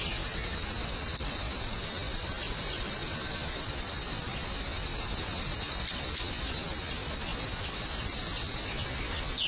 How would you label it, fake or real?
real